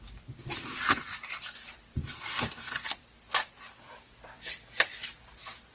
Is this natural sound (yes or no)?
no